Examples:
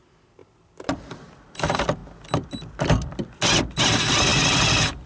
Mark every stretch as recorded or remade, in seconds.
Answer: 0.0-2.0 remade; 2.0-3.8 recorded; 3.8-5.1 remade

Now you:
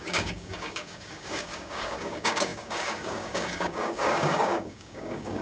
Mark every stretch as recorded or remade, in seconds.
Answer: 0.0-5.4 remade